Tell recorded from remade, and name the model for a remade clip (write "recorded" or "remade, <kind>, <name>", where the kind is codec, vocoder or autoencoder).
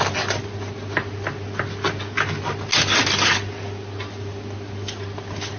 recorded